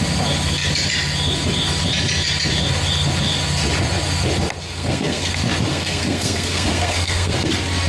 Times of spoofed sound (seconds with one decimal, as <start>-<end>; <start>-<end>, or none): 4.6-5.3; 5.7-7.5

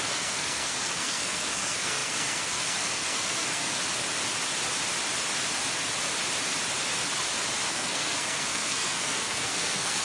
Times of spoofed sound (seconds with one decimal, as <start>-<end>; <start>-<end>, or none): 0.0-3.8; 7.7-10.0

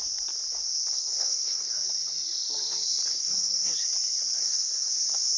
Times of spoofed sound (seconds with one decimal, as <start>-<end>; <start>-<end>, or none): 0.9-1.7; 3.1-3.7; 4.4-4.9

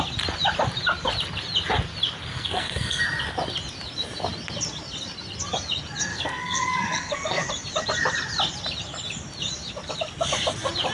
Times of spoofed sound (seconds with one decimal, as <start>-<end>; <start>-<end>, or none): 2.3-3.0; 6.1-7.5

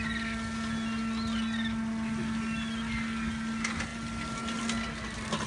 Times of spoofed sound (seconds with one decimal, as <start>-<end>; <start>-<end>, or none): none

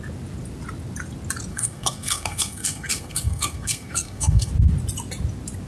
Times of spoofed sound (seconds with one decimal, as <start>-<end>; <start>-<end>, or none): 1.5-4.5

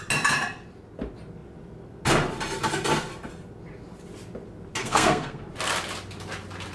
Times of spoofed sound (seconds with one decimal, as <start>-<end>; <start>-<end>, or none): 4.8-5.4